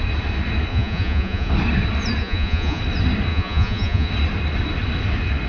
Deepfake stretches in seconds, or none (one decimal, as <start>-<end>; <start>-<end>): 0.7-1.5; 2.2-2.8; 3.3-4.1